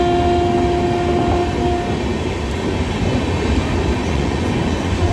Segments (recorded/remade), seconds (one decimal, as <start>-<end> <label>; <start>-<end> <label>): 0.0-4.0 recorded; 4.0-5.1 remade